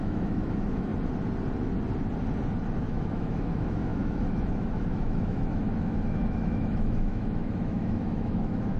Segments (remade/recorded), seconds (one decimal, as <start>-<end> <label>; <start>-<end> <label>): 0.0-0.9 remade; 0.9-2.8 recorded; 2.8-8.8 remade